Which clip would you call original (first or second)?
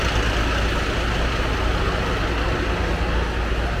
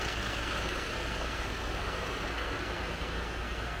first